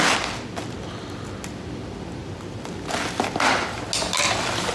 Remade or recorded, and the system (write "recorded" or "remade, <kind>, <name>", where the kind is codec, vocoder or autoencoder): recorded